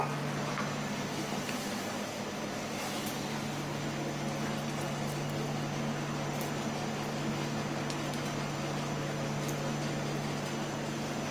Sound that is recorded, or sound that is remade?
recorded